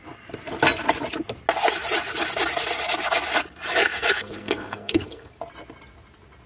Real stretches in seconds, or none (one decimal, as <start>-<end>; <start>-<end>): 0.0-3.8; 5.3-6.5

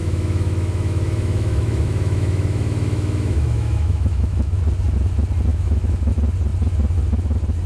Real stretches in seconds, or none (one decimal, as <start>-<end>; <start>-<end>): 4.6-5.5; 6.1-7.7

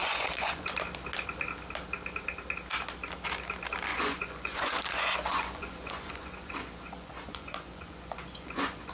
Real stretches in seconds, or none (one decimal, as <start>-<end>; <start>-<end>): 0.7-3.9

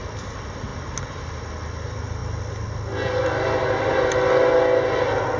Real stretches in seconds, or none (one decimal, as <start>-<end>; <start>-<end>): 0.0-5.4

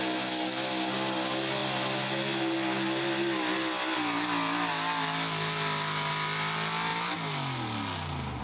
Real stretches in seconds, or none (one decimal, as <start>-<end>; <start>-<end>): 0.0-8.4